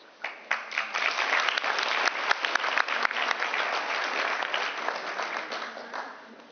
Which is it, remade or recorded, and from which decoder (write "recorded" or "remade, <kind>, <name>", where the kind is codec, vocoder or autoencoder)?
recorded